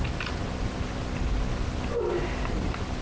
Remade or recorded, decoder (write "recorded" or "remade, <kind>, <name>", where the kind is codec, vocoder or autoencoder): recorded